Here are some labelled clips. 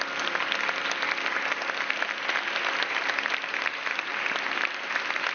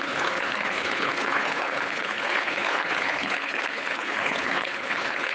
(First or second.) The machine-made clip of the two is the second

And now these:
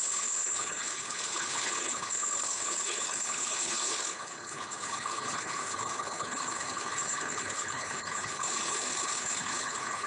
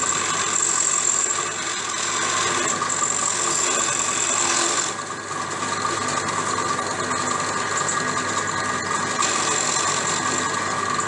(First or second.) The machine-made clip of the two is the first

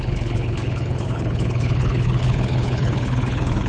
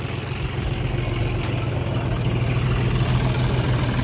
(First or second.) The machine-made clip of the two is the first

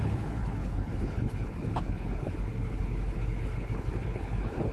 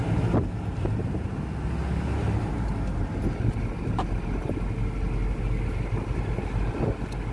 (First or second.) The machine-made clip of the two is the first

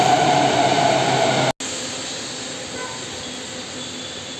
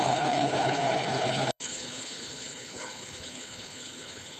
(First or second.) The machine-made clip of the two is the second